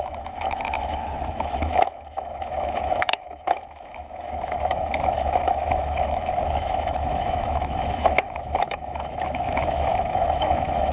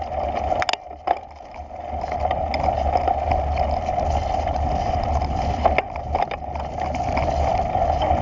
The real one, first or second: second